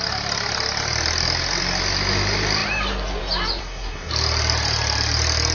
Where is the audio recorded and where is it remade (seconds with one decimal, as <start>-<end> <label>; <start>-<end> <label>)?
0.0-3.6 recorded; 3.6-4.1 remade; 4.1-5.5 recorded